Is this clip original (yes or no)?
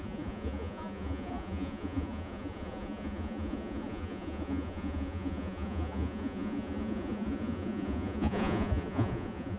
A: no